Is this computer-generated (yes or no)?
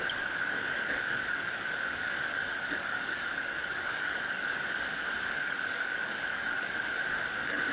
yes